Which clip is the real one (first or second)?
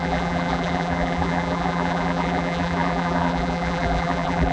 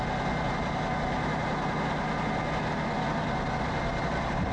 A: second